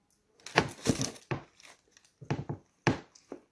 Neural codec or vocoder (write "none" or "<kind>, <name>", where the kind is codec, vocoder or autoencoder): none